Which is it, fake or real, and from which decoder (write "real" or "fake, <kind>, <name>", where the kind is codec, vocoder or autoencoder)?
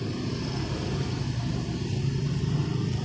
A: real